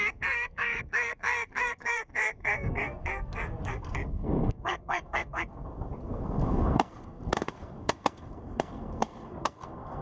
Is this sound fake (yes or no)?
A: yes